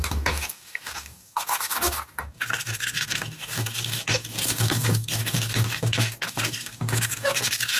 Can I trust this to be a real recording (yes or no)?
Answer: no